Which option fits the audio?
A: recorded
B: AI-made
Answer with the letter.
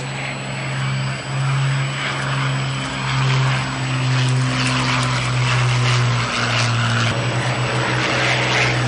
A